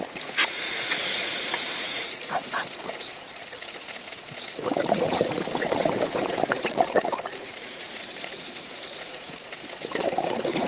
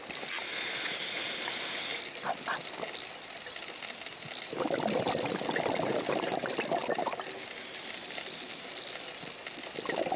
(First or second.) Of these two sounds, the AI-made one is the first